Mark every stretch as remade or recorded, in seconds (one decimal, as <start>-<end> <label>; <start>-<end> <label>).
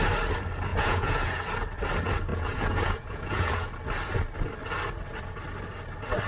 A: 0.0-0.7 recorded; 0.7-1.4 remade; 1.4-2.3 recorded; 2.3-3.7 remade; 3.7-6.3 recorded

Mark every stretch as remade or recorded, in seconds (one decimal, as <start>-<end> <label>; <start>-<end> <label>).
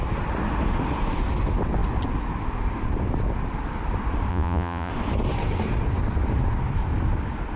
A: 0.0-4.3 recorded; 4.3-4.9 remade; 4.9-7.6 recorded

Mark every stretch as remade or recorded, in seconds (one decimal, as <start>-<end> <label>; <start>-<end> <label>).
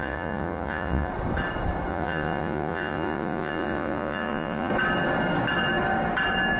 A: 0.0-1.1 remade; 1.1-1.9 recorded; 1.9-4.7 remade; 4.7-6.6 recorded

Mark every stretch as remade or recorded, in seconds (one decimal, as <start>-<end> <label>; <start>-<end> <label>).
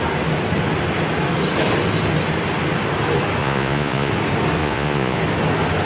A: 0.0-3.4 recorded; 3.4-4.1 remade; 4.1-4.6 recorded; 4.6-5.2 remade; 5.2-5.9 recorded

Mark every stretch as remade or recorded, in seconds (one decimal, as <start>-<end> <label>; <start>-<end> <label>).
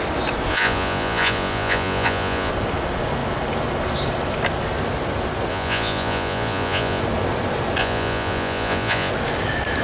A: 0.0-0.5 recorded; 0.5-2.5 remade; 2.5-5.5 recorded; 5.5-7.0 remade; 7.0-7.8 recorded; 7.8-9.1 remade; 9.1-9.8 recorded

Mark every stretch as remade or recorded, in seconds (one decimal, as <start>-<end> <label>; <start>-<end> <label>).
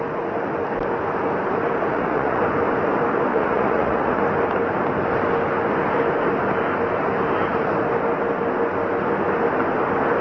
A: 0.0-1.9 recorded; 1.9-2.4 remade; 2.4-3.3 recorded; 3.3-4.2 remade; 4.2-10.2 recorded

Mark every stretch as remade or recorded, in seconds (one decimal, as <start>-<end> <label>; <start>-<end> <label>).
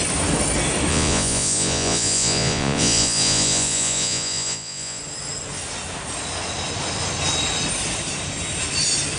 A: 0.0-0.9 recorded; 0.9-5.0 remade; 5.0-9.2 recorded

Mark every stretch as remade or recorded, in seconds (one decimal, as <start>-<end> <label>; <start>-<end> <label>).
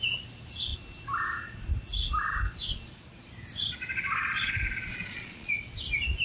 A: 0.0-4.9 recorded; 4.9-5.5 remade; 5.5-6.2 recorded